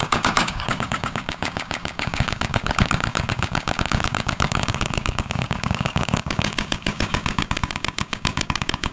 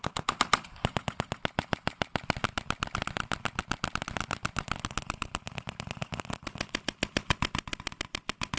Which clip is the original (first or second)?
second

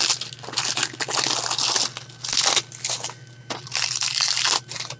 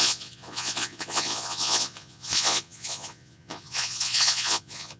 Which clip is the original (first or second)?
first